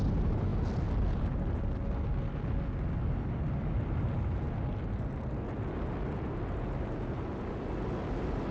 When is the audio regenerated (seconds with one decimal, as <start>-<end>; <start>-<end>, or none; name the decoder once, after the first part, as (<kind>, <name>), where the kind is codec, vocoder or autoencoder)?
none